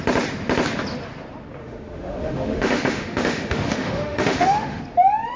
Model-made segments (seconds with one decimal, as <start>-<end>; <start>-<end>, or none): 1.6-4.8